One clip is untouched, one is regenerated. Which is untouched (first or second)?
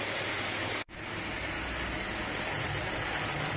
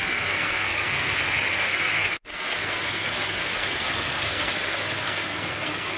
first